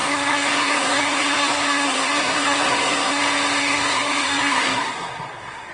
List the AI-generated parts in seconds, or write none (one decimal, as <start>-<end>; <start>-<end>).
0.0-3.2; 3.6-5.7